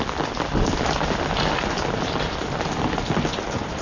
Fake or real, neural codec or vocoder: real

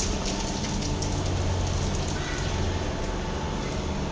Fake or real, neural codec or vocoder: real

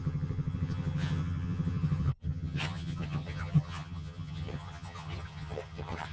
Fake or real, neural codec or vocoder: fake, vocoder, HiFi-GAN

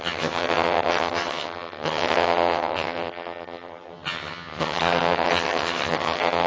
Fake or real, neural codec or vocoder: fake, vocoder, HiFi-GAN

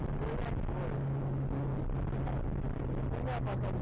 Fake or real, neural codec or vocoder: real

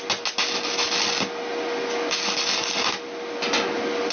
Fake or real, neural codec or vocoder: real